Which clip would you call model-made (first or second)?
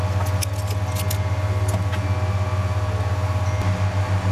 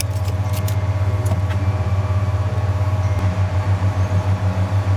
second